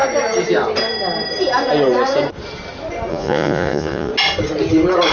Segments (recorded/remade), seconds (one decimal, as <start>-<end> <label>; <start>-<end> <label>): 0.0-3.1 recorded; 3.1-4.1 remade; 4.1-5.1 recorded